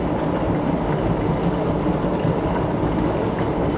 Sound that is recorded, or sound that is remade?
recorded